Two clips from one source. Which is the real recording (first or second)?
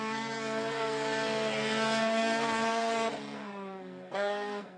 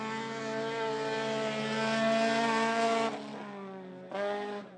second